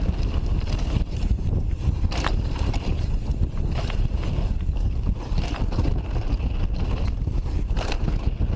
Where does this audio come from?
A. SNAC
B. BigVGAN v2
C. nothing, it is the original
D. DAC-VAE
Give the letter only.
C